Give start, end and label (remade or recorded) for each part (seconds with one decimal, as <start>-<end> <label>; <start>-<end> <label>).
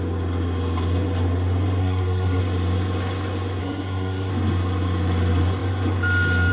0.0-1.8 recorded; 1.8-2.4 remade; 2.4-3.6 recorded; 3.6-4.3 remade; 4.3-6.5 recorded